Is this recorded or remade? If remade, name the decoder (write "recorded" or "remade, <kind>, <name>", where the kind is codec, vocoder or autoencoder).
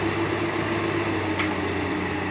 recorded